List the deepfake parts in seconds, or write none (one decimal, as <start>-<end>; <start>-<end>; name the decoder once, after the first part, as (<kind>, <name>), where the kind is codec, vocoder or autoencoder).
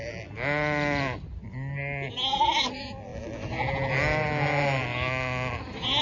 none